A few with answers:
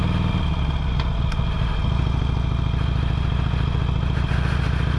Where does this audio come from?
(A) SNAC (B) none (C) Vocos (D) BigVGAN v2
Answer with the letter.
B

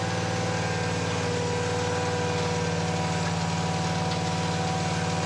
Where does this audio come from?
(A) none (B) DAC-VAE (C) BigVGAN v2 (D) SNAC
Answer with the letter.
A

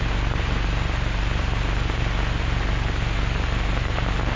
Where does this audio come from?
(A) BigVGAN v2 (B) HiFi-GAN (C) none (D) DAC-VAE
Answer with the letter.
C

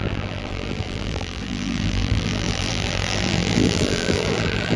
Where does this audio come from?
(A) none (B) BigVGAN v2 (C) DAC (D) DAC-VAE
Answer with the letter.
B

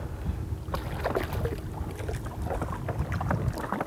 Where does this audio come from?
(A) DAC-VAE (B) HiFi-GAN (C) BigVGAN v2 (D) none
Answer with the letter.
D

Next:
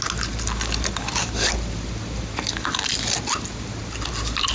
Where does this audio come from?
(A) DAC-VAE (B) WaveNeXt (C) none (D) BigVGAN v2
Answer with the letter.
C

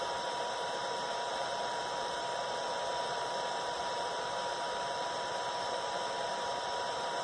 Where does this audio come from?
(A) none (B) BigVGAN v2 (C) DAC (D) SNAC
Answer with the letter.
B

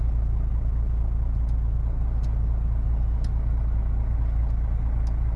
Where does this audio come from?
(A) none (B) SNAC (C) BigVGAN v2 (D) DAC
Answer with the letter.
A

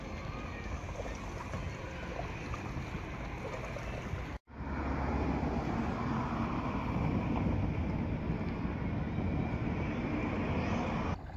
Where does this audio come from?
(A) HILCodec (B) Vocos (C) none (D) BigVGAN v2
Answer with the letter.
C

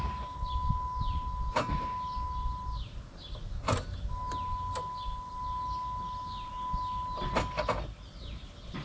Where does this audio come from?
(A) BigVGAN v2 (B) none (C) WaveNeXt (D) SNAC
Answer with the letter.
B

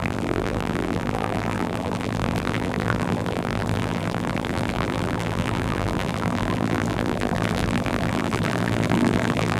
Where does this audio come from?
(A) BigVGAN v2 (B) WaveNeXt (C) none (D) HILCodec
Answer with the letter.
A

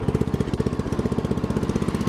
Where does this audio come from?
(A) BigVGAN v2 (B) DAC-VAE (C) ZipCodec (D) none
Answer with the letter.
D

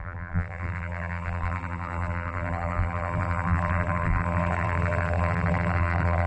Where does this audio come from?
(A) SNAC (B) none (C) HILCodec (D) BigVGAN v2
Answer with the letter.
D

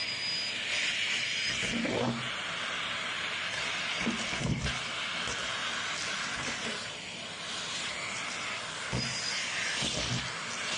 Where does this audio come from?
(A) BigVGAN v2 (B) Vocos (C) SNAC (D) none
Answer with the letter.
D